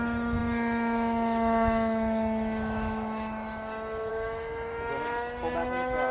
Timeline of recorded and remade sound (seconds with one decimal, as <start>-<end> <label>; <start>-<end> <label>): 0.0-6.1 remade